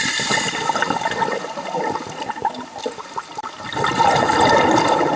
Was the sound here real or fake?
fake